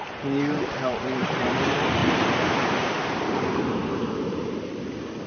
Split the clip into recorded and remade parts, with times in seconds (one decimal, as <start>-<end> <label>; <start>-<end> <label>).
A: 0.0-2.0 remade; 2.0-3.0 recorded; 3.0-5.3 remade